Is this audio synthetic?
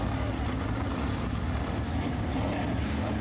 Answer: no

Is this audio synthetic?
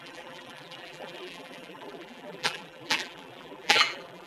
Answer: yes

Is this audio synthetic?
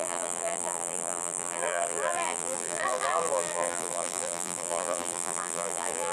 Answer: yes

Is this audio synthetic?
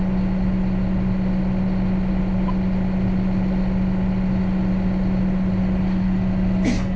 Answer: no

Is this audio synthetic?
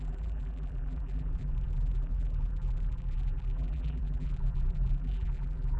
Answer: yes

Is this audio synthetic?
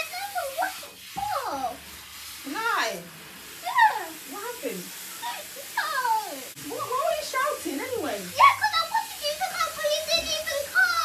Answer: no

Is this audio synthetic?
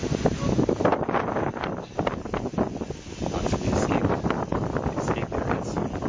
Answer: no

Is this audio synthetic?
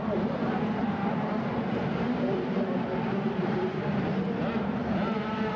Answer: yes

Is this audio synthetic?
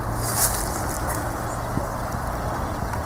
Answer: no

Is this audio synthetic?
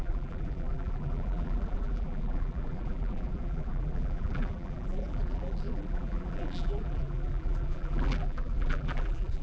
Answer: yes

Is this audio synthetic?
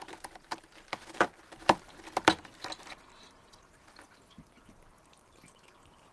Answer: no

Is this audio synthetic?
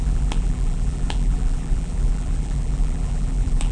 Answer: yes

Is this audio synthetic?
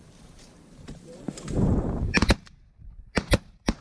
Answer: yes